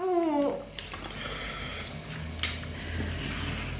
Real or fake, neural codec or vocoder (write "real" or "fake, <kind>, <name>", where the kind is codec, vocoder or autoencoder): real